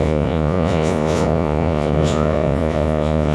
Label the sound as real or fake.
fake